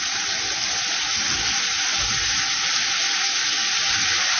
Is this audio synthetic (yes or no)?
no